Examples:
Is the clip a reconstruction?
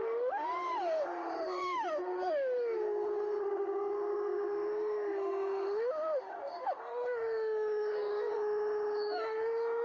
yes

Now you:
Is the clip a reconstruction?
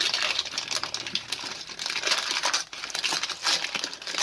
no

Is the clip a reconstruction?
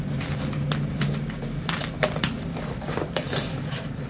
no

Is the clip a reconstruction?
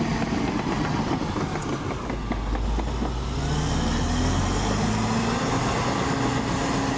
no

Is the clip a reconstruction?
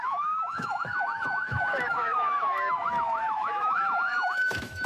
yes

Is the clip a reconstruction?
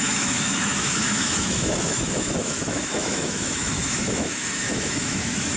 yes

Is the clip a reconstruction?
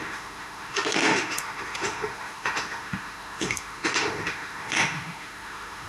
yes